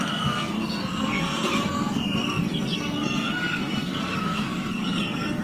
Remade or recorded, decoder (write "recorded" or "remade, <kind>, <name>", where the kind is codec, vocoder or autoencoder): remade, codec, SNAC